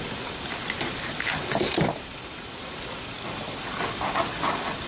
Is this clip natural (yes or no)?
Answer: yes